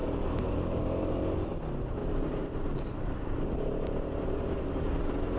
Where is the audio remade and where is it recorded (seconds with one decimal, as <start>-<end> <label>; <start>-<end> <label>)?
0.0-2.0 recorded; 2.0-4.9 remade; 4.9-5.4 recorded

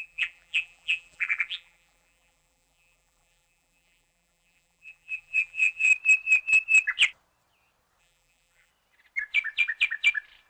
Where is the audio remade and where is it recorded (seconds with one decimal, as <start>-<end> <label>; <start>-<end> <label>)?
0.0-5.9 remade; 5.9-8.0 recorded; 8.0-8.7 remade; 8.7-10.5 recorded

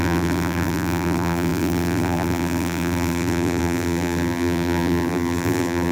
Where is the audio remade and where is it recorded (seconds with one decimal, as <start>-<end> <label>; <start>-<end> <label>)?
0.0-5.9 remade

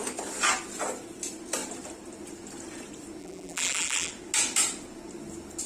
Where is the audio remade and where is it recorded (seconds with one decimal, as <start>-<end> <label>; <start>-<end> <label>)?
0.0-3.2 recorded; 3.2-4.1 remade; 4.1-5.7 recorded

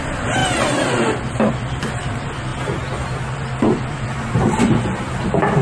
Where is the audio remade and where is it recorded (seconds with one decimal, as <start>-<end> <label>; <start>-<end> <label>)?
0.0-0.4 remade; 0.4-1.5 recorded; 1.5-5.6 remade